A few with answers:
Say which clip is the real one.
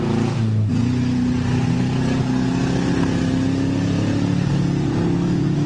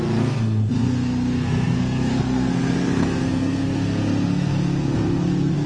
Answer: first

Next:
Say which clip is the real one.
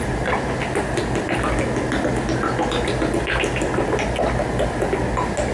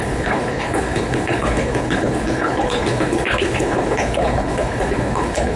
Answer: first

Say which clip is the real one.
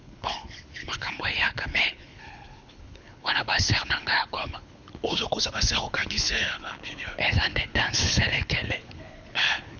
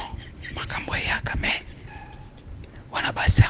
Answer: second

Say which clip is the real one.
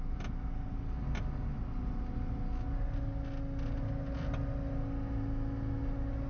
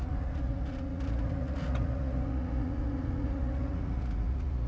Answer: first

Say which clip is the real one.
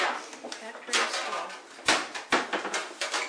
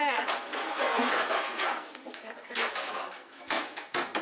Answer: first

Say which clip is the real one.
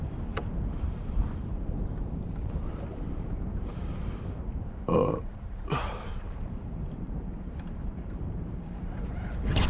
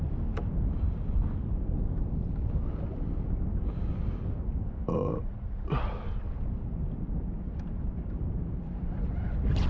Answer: second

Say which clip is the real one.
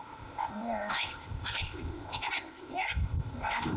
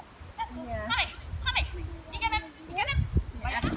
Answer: second